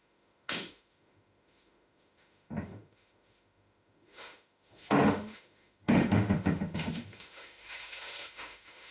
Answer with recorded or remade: remade